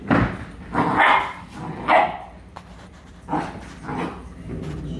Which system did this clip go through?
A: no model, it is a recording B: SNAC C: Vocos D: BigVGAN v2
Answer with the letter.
A